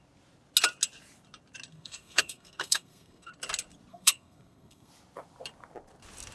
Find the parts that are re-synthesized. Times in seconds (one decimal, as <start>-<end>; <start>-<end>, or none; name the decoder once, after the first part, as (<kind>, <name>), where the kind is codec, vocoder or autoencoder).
1.7-3.3 (codec, SNAC); 3.9-4.9